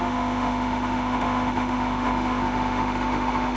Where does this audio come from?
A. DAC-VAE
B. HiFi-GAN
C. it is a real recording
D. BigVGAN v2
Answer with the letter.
A